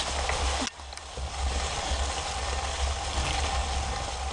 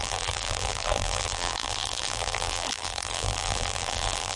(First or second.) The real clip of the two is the first